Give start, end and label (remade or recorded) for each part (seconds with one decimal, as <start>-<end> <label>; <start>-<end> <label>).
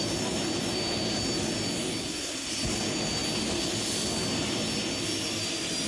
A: 0.0-2.0 recorded; 2.0-2.5 remade; 2.5-5.9 recorded